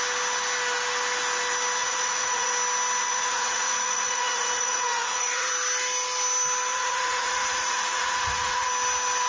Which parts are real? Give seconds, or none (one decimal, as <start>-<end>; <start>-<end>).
0.0-1.8; 2.5-3.0; 5.5-6.7; 8.7-9.3

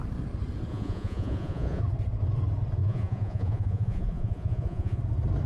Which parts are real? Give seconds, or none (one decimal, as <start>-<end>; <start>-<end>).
0.0-0.7; 1.8-2.8; 5.0-5.5

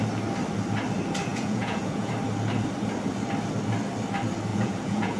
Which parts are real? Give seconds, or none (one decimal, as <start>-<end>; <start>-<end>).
0.0-1.3; 2.1-4.5

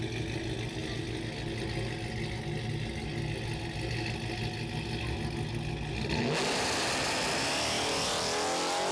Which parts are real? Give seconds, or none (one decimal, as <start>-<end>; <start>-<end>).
0.0-8.9

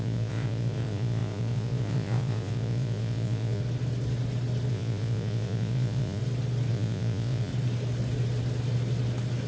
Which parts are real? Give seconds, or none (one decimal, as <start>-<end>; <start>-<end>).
3.6-4.7; 6.2-6.7; 7.5-9.5

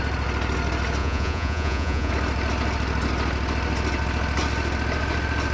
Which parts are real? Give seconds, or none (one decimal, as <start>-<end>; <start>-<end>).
0.0-1.0; 2.1-5.5

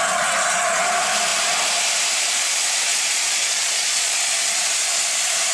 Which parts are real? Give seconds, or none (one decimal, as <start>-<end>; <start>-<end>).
0.0-2.9; 4.2-5.5